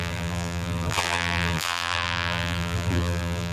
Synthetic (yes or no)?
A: yes